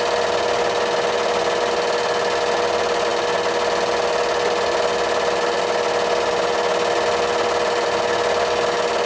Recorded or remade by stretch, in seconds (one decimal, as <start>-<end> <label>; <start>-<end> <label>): 0.0-9.1 recorded